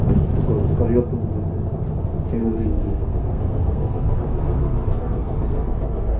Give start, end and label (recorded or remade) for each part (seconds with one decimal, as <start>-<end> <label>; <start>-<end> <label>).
0.0-2.4 recorded; 2.4-6.2 remade